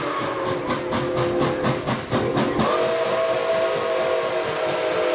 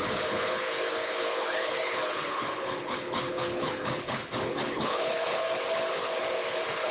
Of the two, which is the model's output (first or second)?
second